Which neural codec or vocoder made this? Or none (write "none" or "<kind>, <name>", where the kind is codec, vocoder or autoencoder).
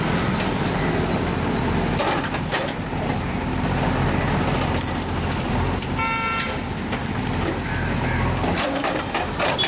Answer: none